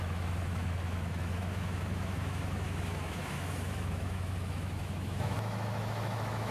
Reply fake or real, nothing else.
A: fake